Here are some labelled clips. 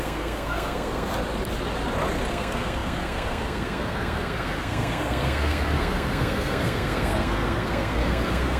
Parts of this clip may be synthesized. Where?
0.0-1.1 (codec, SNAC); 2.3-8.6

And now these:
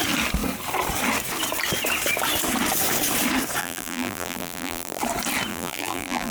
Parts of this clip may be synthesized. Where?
3.6-5.0 (vocoder, BigVGAN v2); 5.5-6.3

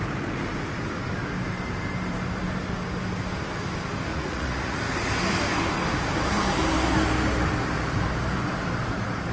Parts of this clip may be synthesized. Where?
4.1-4.8 (vocoder, Vocos)

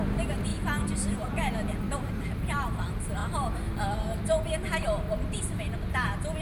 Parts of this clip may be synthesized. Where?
none

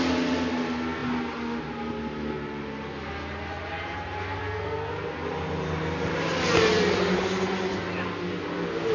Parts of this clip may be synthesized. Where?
4.4-4.9 (codec, SNAC)